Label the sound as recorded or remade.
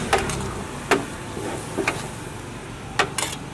recorded